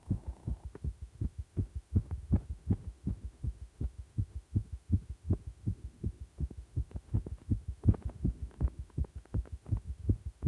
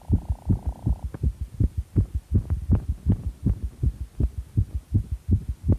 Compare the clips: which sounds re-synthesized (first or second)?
first